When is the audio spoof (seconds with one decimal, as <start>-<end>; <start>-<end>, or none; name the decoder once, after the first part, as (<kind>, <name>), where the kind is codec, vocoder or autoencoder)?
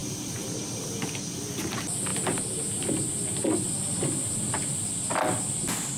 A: 0.0-0.8 (vocoder, BigVGAN v2)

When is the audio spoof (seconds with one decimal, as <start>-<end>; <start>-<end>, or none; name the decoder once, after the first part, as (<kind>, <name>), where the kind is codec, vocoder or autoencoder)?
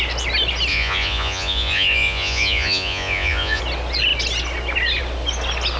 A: 0.7-3.6 (vocoder, Vocos)